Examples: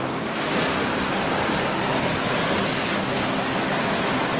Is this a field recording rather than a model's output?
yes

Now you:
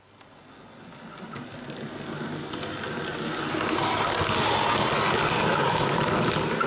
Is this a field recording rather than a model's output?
yes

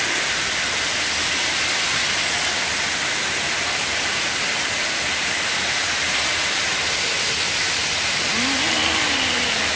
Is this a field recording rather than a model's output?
yes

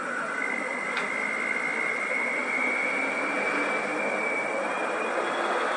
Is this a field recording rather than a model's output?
yes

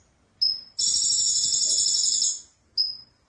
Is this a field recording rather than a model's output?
yes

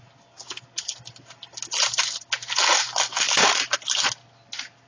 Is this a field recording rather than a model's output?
yes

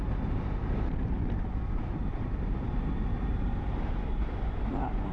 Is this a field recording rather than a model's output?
no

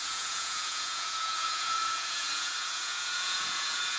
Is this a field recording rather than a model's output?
no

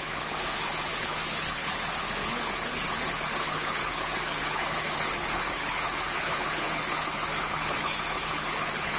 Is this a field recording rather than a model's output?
no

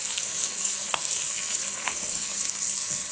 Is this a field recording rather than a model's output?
no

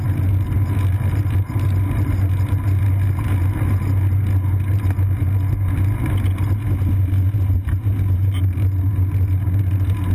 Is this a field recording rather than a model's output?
yes